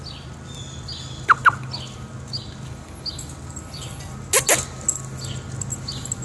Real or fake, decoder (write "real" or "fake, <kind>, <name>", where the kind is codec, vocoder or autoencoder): real